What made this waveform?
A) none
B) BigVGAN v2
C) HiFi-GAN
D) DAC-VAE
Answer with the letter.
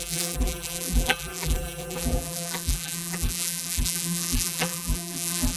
B